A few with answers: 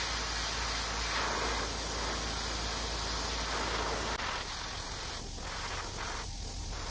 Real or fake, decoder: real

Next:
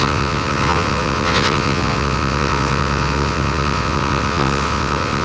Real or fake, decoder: fake, vocoder, WaveNeXt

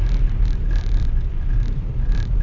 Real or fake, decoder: real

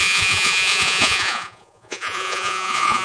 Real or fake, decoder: fake, vocoder, Vocos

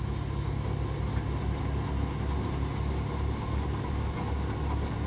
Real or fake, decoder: real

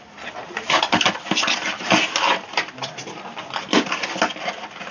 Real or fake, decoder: real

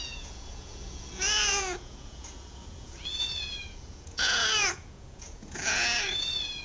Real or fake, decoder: fake, vocoder, Vocos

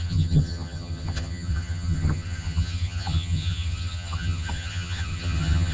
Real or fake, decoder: fake, vocoder, HiFi-GAN